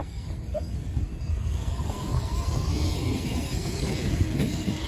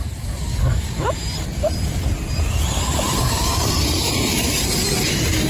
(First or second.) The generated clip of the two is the first